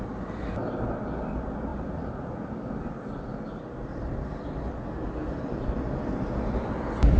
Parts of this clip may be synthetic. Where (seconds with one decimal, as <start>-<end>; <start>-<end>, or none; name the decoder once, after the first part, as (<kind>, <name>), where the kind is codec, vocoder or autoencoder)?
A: none